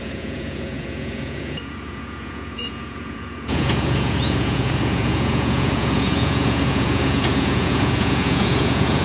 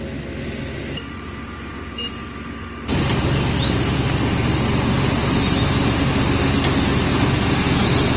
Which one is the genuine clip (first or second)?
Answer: second